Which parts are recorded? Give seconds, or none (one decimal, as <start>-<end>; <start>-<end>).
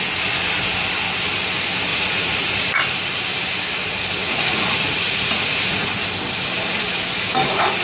0.0-1.9; 2.8-4.2; 5.9-7.8